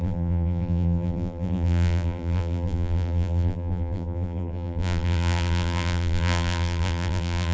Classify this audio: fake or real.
fake